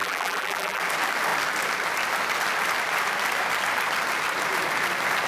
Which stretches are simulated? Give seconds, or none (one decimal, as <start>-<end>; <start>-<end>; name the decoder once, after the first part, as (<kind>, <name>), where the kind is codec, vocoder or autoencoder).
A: 0.0-0.8 (vocoder, BigVGAN v2)